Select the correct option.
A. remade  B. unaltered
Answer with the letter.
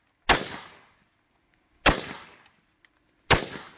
B